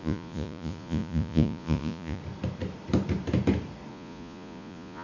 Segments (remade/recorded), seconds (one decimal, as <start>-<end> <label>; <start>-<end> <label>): 0.0-2.2 remade; 2.2-3.9 recorded; 3.9-5.0 remade